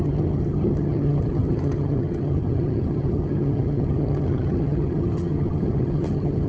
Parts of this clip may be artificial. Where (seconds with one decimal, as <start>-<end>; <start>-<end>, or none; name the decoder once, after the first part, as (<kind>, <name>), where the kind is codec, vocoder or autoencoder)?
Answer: 0.0-6.5 (vocoder, HiFi-GAN)